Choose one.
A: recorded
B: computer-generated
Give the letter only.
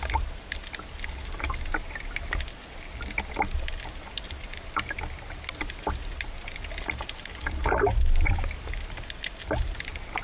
A